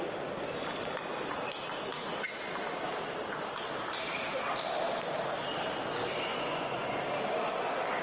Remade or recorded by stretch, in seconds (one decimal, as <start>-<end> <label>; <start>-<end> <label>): 0.0-6.3 recorded; 6.3-7.0 remade; 7.0-8.0 recorded

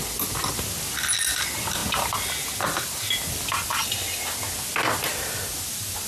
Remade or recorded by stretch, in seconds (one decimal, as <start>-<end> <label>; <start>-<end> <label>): 0.0-6.1 recorded